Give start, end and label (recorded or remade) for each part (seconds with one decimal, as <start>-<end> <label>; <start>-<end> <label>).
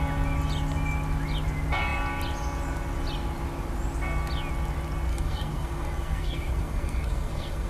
0.0-5.1 recorded; 5.1-7.7 remade